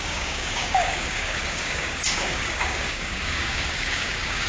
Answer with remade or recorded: remade